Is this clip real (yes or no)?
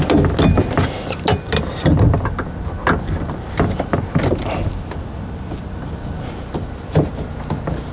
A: yes